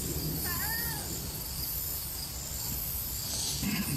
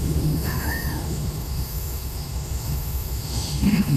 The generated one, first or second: second